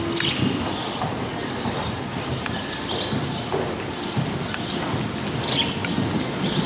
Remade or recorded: recorded